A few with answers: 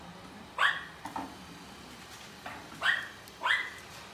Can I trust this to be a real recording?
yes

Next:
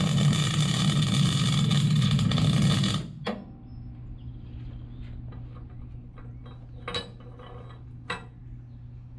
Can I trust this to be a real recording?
yes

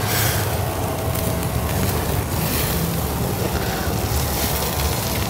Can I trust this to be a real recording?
yes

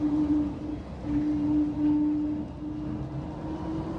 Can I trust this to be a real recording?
yes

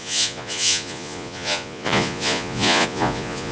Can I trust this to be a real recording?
no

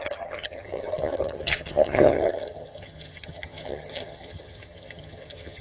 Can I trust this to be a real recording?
no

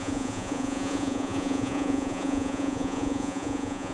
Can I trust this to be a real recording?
no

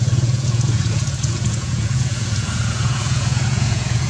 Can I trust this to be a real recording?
no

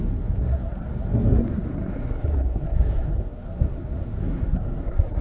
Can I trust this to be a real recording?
no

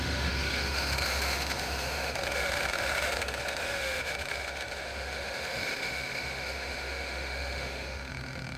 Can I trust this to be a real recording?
no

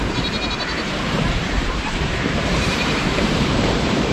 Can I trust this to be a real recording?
no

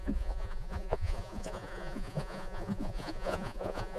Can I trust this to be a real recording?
no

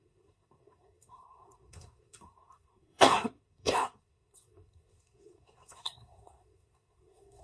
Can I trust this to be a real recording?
no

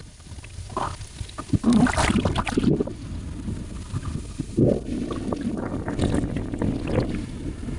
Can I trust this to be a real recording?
yes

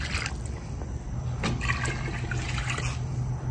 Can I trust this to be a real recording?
yes